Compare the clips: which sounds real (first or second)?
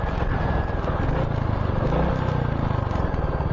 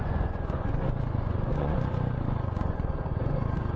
first